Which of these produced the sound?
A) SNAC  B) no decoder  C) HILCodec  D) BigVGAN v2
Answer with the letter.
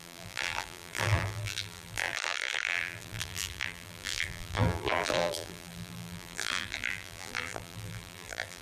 D